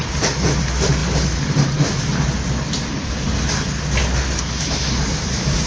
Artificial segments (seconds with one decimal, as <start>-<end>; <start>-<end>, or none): none